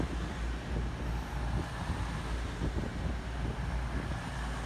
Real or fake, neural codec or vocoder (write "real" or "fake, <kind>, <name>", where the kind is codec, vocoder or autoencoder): real